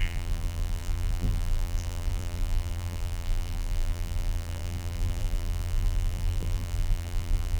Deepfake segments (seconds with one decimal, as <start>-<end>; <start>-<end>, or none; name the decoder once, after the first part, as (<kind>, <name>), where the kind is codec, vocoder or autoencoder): 0.0-7.6 (vocoder, BigVGAN v2)